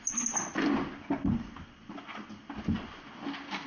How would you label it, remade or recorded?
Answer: recorded